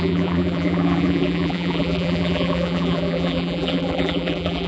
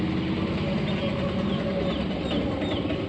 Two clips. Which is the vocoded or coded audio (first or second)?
first